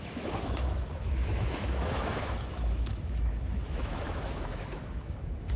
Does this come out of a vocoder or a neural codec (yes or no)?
yes